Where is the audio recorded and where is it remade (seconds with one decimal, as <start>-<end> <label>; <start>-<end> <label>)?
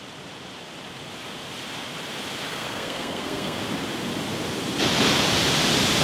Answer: 0.0-2.5 recorded; 2.5-3.6 remade; 3.6-6.0 recorded